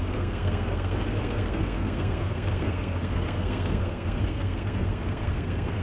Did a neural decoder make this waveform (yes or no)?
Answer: yes